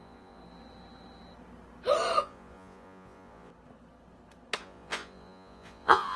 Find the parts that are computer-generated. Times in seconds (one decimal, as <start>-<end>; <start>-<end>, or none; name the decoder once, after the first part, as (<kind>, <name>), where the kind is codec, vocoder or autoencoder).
0.0-0.4 (vocoder, Vocos); 2.2-3.5; 4.6-6.2